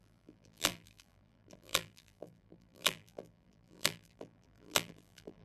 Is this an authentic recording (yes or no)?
no